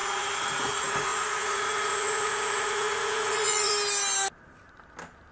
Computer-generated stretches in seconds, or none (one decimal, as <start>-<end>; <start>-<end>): 0.0-3.7